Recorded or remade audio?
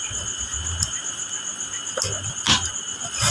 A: recorded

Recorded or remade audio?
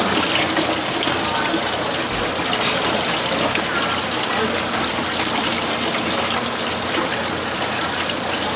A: recorded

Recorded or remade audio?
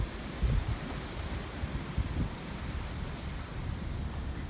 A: recorded